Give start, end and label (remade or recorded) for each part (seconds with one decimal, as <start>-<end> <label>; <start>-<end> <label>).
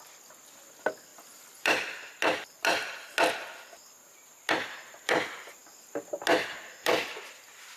0.0-1.1 recorded; 1.1-3.0 remade; 3.0-7.8 recorded